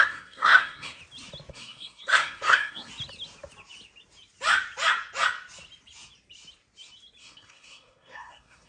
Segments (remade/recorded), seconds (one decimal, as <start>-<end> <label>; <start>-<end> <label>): 0.0-1.0 remade; 1.0-1.5 recorded; 1.5-2.9 remade; 2.9-7.2 recorded; 7.2-8.7 remade